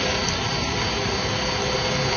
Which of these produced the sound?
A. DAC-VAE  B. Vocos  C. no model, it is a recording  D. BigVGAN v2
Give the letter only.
C